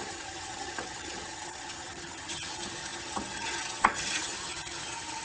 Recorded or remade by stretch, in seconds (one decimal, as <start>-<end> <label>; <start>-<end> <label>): 0.0-5.2 remade